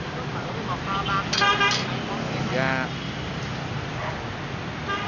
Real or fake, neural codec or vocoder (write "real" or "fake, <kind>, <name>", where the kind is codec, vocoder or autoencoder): real